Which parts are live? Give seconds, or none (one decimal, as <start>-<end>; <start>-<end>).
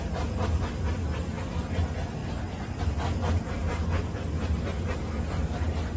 0.0-2.2; 2.8-6.0